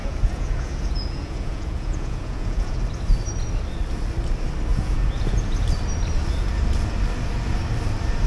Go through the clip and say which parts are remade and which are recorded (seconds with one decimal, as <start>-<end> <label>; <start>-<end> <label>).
0.0-2.8 remade; 2.8-4.7 recorded; 4.7-5.5 remade; 5.5-8.3 recorded